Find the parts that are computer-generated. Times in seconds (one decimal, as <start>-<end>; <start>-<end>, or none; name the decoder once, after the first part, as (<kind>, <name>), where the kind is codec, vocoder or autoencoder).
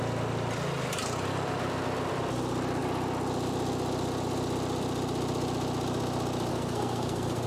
6.5-7.5 (codec, SNAC)